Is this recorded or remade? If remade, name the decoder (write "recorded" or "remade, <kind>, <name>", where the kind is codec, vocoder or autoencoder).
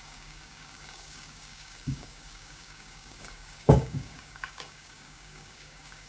remade, codec, DAC